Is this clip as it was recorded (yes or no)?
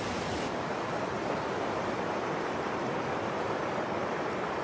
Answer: yes